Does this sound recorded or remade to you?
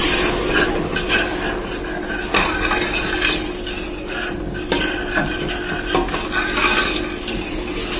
recorded